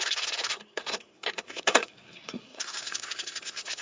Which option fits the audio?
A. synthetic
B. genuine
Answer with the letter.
A